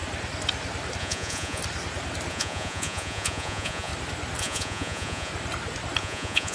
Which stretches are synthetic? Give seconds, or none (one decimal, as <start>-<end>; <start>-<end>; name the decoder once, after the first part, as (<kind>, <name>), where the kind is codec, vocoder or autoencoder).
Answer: 1.0-1.6 (vocoder, Vocos); 2.3-3.9; 4.4-5.3; 6.0-6.5